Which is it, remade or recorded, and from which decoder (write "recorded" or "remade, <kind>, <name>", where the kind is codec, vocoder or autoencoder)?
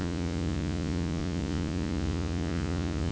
remade, vocoder, Vocos